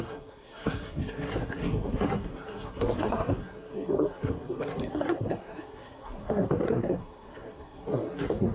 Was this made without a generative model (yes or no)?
no